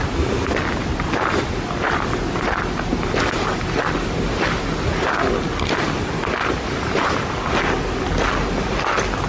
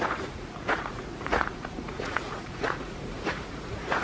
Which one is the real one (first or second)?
first